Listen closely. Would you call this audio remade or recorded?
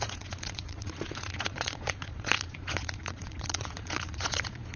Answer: remade